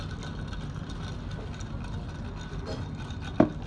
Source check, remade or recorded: recorded